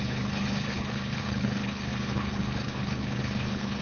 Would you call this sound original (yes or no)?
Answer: no